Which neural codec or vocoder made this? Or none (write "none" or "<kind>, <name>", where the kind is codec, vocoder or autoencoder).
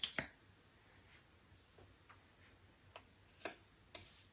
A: none